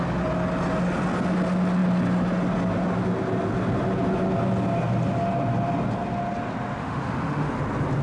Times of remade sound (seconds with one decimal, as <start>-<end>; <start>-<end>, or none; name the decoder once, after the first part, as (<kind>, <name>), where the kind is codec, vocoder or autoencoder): 6.8-7.5 (autoencoder, DAC-VAE)